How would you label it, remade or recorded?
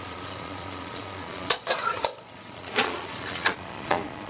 remade